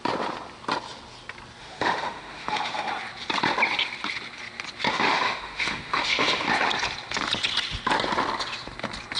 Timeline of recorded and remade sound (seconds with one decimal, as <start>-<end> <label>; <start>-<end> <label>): 0.0-1.6 recorded; 1.6-2.9 remade; 2.9-4.9 recorded; 4.9-6.5 remade; 6.5-9.2 recorded